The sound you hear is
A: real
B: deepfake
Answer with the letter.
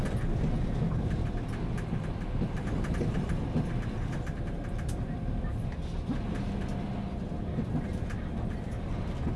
A